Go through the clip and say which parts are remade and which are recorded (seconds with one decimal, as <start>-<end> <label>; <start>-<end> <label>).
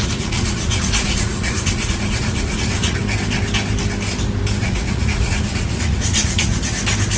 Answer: 0.0-3.0 remade; 3.0-4.6 recorded; 4.6-6.5 remade; 6.5-7.2 recorded